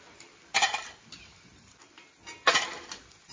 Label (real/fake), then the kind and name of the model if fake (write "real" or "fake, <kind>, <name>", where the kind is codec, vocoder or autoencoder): real